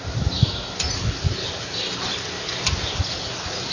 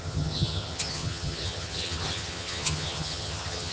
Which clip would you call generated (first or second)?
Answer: second